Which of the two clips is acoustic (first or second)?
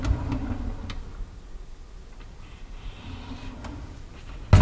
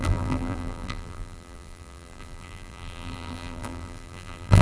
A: first